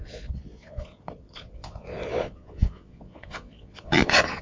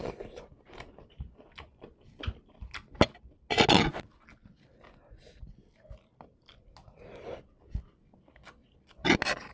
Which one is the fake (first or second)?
first